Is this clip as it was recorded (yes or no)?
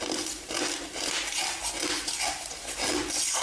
yes